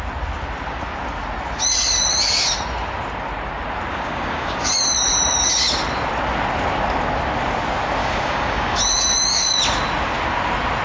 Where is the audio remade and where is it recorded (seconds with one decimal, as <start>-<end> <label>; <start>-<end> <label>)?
0.0-3.9 recorded; 3.9-4.7 remade; 4.7-8.0 recorded; 8.0-8.8 remade; 8.8-10.8 recorded